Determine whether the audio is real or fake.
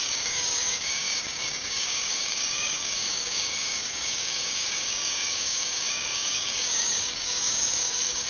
fake